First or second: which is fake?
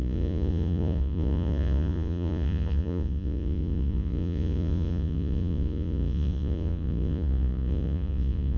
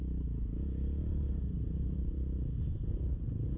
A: first